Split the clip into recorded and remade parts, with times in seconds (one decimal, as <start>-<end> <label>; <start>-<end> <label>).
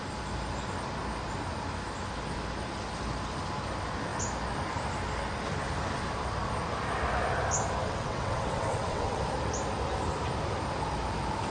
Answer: 0.0-7.8 recorded; 7.8-9.2 remade; 9.2-11.5 recorded